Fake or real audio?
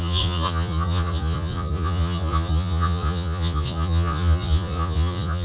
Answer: fake